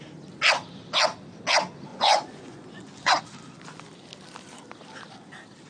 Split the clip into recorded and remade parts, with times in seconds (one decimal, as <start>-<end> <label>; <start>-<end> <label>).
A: 0.0-1.9 recorded; 1.9-3.2 remade; 3.2-5.7 recorded

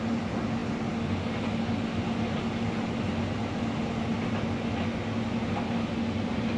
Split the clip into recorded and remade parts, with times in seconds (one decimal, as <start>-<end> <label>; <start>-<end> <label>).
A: 0.0-6.6 recorded

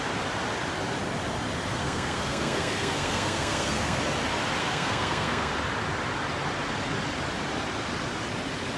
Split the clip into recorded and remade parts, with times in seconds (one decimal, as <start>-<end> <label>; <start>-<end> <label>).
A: 0.0-1.7 recorded; 1.7-4.0 remade; 4.0-4.6 recorded; 4.6-5.5 remade; 5.5-8.8 recorded

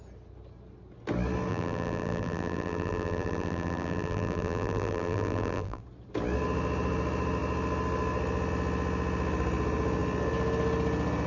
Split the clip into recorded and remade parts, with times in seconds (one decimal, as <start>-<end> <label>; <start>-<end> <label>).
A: 0.0-1.5 recorded; 1.5-5.8 remade; 5.8-11.3 recorded

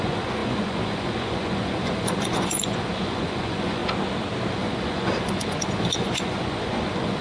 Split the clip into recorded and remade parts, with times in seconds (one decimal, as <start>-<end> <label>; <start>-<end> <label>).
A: 0.0-3.8 remade; 3.8-4.5 recorded; 4.5-7.2 remade